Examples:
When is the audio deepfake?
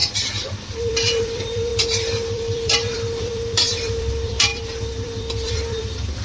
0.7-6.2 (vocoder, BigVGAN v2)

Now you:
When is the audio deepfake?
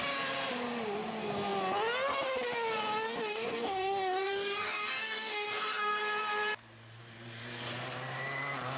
3.3-6.0 (codec, DAC)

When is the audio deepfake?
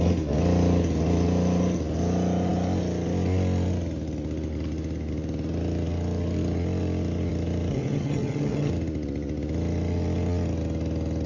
7.7-8.7 (vocoder, HiFi-GAN)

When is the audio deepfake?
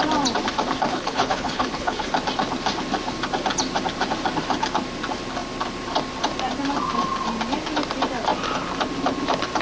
0.9-2.1 (codec, HILCodec)